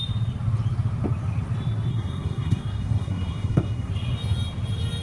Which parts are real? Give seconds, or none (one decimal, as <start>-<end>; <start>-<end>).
0.0-1.9; 3.9-5.0